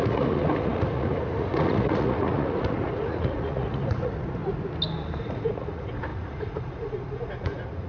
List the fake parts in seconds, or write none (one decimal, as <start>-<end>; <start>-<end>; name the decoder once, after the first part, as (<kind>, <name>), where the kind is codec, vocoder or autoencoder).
0.0-4.4 (vocoder, Vocos); 5.2-7.9